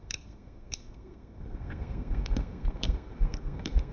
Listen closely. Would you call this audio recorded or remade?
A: remade